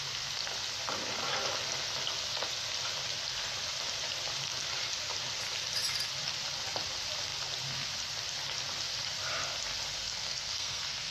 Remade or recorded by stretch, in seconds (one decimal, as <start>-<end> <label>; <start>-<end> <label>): 0.0-9.9 recorded; 9.9-11.1 remade